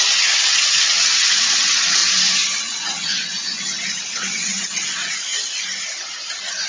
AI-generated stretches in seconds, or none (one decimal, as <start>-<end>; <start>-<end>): 0.0-2.0; 2.6-5.3